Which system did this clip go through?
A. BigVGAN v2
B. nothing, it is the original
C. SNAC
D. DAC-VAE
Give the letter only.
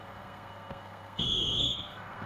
C